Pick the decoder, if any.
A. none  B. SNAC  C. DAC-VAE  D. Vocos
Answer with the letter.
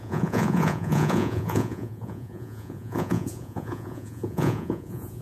D